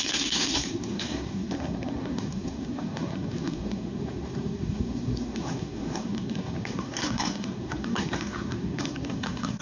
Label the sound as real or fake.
fake